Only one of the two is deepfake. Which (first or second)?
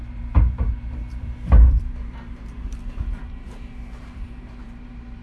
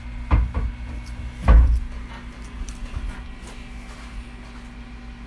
first